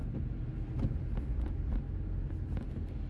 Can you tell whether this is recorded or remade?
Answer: recorded